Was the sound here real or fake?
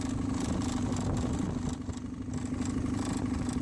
real